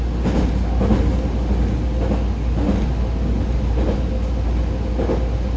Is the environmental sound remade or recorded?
recorded